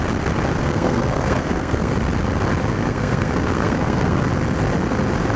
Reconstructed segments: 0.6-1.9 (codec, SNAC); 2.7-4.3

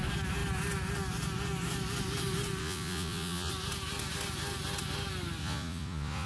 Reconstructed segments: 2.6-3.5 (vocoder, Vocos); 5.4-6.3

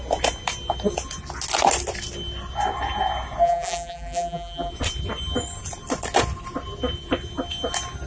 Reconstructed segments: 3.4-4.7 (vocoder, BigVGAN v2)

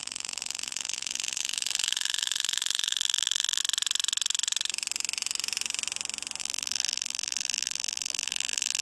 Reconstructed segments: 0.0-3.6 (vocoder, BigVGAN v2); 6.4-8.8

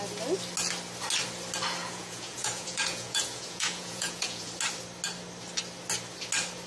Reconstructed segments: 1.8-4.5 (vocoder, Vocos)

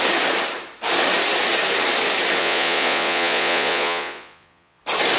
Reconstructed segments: 2.4-4.8 (vocoder, Vocos)